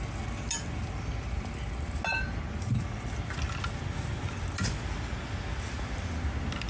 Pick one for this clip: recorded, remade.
recorded